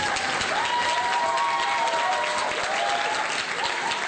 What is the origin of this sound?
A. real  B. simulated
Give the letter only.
A